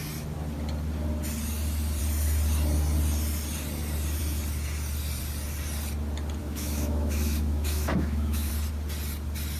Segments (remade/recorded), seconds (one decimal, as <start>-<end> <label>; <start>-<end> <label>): 0.0-6.4 recorded; 6.4-8.5 remade; 8.5-9.6 recorded

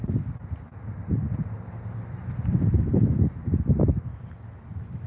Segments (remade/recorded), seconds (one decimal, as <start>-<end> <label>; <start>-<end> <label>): 0.0-5.1 recorded

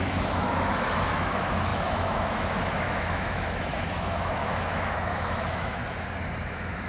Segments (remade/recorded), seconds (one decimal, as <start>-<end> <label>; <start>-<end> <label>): 0.0-5.8 remade; 5.8-6.5 recorded; 6.5-6.9 remade

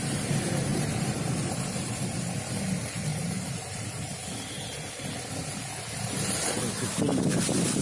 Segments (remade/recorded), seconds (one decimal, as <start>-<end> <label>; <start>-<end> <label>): 0.0-0.7 recorded; 0.7-1.2 remade; 1.2-3.1 recorded; 3.1-3.9 remade; 3.9-7.8 recorded

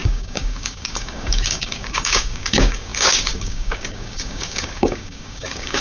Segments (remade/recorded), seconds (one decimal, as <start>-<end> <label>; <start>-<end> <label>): 0.0-5.8 remade